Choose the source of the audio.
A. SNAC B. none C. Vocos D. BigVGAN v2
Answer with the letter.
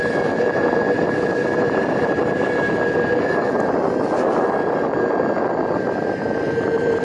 B